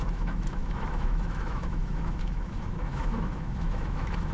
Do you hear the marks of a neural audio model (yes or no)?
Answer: yes